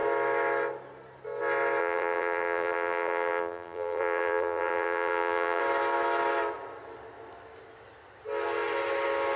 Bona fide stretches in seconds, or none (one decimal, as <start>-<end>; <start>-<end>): 0.0-1.8; 5.6-9.4